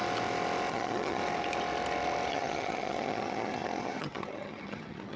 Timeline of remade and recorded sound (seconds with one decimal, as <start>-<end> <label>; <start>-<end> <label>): 0.0-0.7 recorded; 0.7-1.2 remade; 1.2-2.3 recorded; 2.3-5.2 remade